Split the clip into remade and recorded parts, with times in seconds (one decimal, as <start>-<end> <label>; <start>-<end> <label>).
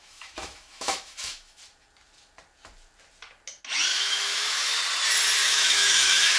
0.0-1.6 remade; 1.6-3.9 recorded; 3.9-4.8 remade; 4.8-5.4 recorded; 5.4-6.4 remade